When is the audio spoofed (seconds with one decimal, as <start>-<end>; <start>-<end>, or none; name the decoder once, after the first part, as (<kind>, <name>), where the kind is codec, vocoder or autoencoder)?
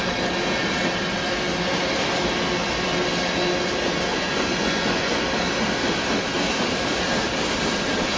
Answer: 4.1-5.2 (vocoder, Vocos)